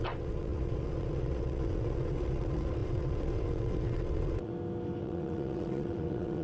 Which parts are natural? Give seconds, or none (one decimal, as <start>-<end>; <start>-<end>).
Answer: 4.5-5.0